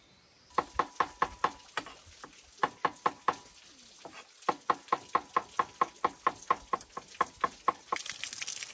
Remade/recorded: recorded